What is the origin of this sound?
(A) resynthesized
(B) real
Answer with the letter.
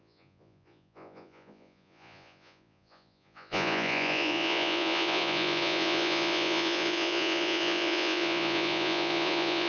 A